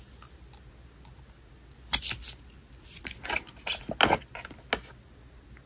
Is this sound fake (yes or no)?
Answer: no